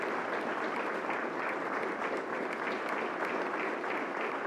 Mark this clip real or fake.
real